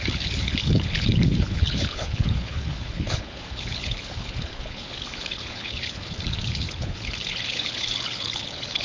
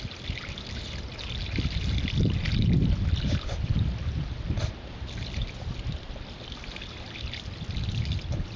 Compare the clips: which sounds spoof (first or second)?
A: first